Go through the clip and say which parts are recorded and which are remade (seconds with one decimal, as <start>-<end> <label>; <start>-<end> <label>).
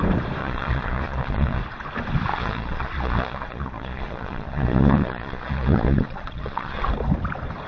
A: 0.0-0.4 recorded; 0.4-1.6 remade; 1.6-2.3 recorded; 2.3-6.9 remade; 6.9-7.7 recorded